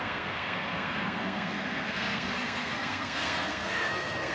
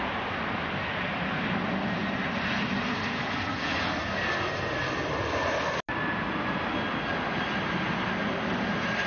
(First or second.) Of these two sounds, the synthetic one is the first